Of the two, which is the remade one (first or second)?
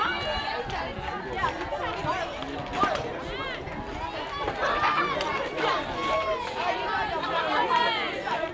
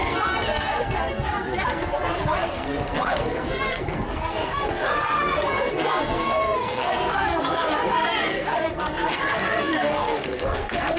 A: second